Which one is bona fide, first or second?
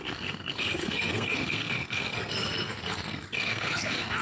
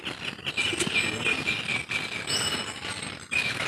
second